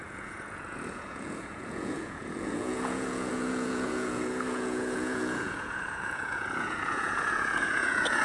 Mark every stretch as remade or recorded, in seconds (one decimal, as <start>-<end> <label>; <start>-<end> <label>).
0.0-8.2 remade